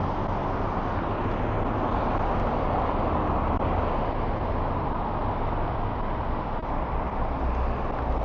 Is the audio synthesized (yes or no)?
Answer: no